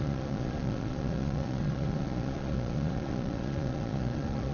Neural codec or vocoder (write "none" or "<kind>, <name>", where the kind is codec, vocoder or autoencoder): vocoder, Vocos